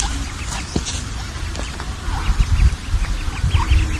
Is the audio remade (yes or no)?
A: no